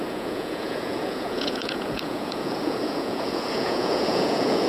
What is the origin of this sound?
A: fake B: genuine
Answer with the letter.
A